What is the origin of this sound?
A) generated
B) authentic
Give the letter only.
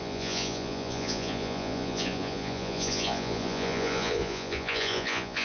A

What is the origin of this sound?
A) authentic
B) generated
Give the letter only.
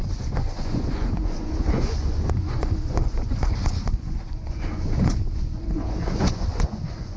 B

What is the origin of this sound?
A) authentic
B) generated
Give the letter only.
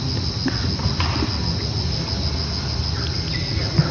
A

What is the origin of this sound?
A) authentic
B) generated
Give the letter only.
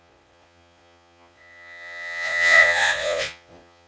B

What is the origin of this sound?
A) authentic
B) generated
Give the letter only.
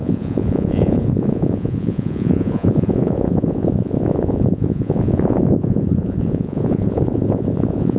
B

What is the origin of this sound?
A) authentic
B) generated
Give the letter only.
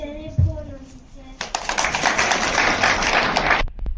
A